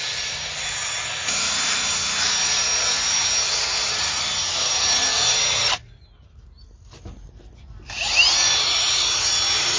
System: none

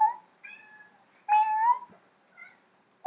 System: none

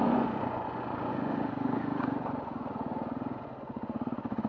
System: vocoder, Vocos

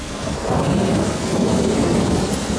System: codec, SNAC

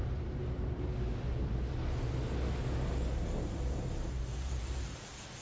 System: none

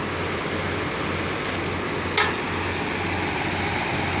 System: none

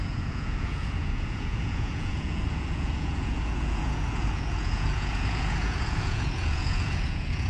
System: vocoder, Vocos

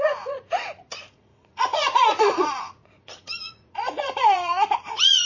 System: vocoder, Vocos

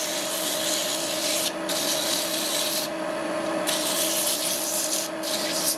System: none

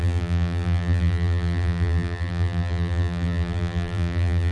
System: vocoder, BigVGAN v2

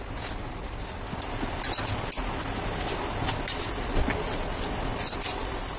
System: none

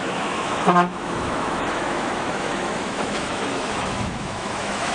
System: autoencoder, DAC-VAE